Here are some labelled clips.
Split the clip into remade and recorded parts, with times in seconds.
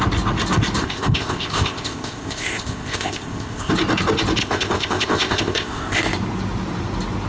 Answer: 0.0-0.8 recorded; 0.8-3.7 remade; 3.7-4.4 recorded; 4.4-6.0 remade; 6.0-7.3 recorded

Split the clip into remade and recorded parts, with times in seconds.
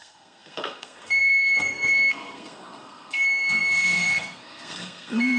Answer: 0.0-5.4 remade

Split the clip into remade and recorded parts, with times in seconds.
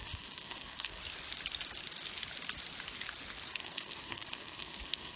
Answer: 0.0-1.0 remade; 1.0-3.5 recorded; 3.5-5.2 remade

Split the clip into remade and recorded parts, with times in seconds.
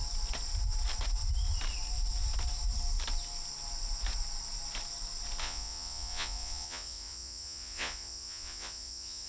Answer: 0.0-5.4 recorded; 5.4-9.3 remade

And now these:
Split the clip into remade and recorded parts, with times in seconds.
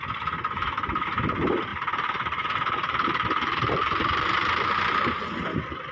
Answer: 0.0-1.7 recorded; 1.7-5.2 remade; 5.2-5.9 recorded